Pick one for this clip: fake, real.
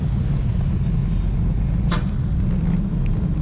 real